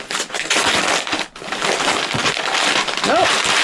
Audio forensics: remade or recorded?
recorded